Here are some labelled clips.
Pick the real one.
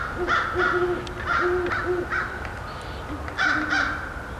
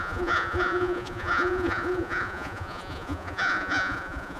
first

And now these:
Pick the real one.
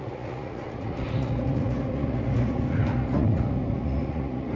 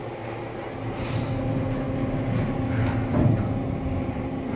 second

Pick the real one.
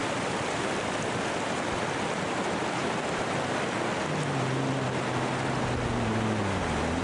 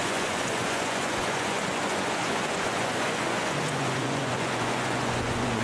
first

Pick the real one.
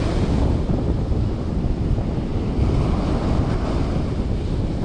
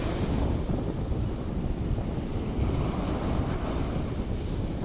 first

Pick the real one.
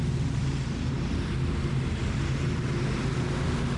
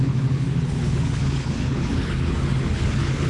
first